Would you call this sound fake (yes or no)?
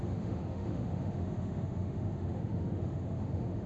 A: yes